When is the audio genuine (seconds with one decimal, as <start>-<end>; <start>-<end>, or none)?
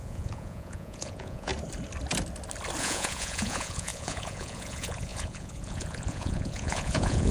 1.5-2.8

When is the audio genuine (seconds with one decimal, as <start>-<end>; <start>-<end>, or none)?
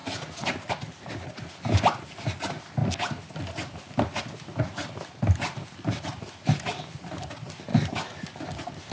0.7-8.9